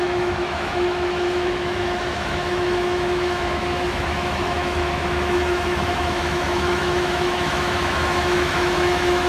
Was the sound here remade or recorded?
remade